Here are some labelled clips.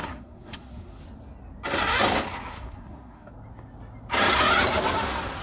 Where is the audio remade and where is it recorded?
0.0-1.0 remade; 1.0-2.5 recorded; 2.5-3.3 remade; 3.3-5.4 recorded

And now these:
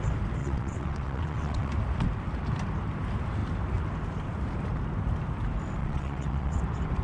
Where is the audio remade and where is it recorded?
0.0-0.4 recorded; 0.4-1.7 remade; 1.7-5.8 recorded; 5.8-6.6 remade; 6.6-7.0 recorded

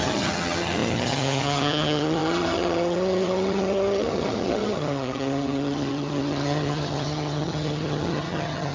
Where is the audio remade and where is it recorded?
0.0-8.7 remade

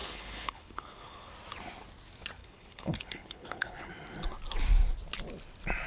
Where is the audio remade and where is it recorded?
0.0-1.3 remade; 1.3-2.4 recorded; 2.4-3.9 remade; 3.9-5.9 recorded

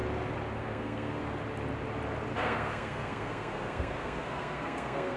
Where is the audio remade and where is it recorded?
0.0-0.6 recorded; 0.6-1.2 remade; 1.2-2.4 recorded; 2.4-5.2 remade

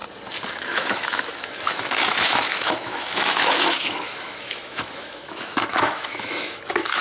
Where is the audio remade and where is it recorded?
0.0-0.6 recorded; 0.6-7.0 remade

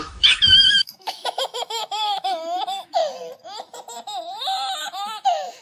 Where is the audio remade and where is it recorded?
0.0-3.0 remade; 3.0-4.8 recorded; 4.8-5.6 remade